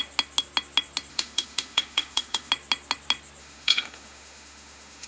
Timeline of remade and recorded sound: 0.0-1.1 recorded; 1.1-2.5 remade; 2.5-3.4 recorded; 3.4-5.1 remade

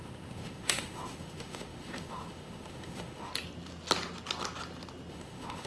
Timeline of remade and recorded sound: 0.0-3.3 remade; 3.3-5.1 recorded; 5.1-5.7 remade

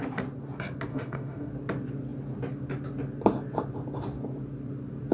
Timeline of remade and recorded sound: 0.0-0.9 recorded; 0.9-1.5 remade; 1.5-5.1 recorded

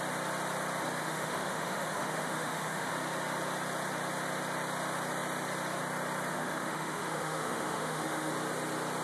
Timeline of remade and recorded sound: 0.0-1.0 recorded; 1.0-2.9 remade; 2.9-6.3 recorded; 6.3-8.3 remade; 8.3-9.0 recorded